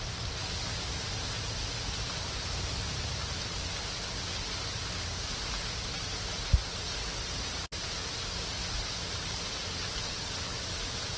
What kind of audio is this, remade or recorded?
recorded